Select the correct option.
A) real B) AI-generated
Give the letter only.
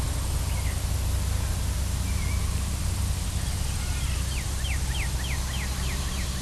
A